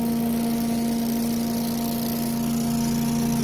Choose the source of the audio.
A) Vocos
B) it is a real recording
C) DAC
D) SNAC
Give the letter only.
B